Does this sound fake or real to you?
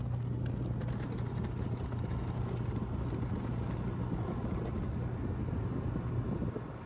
real